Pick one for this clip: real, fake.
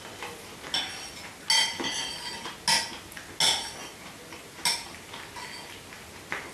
real